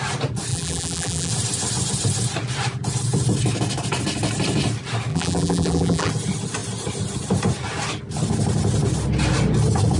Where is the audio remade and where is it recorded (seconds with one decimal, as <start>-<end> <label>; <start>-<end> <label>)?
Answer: 0.0-0.5 recorded; 0.5-1.3 remade; 1.3-5.1 recorded; 5.1-6.1 remade; 6.1-10.0 recorded